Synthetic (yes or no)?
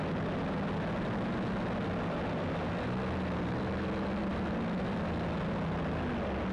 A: no